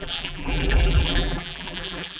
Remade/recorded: remade